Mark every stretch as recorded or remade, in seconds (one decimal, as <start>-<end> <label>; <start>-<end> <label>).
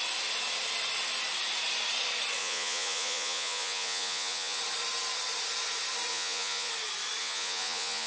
0.0-2.4 recorded; 2.4-4.6 remade; 4.6-6.1 recorded; 6.1-6.7 remade; 6.7-7.2 recorded; 7.2-8.1 remade